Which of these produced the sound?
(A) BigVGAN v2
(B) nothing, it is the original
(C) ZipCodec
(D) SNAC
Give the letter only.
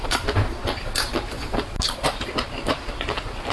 A